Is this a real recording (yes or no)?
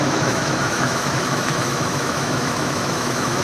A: no